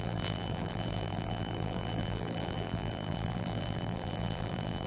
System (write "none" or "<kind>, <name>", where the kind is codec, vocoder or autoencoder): vocoder, BigVGAN v2